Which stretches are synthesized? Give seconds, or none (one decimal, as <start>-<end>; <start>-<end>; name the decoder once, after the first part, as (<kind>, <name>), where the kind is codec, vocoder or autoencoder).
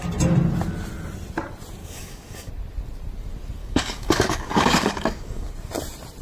1.8-2.5 (codec, DAC); 3.6-5.5